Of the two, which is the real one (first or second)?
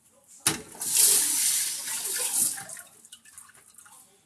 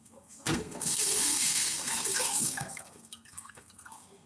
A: first